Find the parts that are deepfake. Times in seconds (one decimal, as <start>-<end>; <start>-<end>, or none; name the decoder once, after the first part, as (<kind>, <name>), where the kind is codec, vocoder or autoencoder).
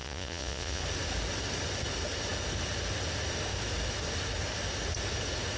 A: 0.0-0.8 (vocoder, Vocos)